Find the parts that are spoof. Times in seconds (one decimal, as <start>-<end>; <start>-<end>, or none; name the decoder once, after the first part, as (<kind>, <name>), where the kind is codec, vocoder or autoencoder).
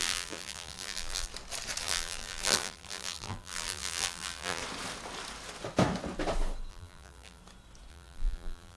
0.0-1.3 (vocoder, BigVGAN v2); 1.8-4.6; 6.7-7.4; 7.9-8.8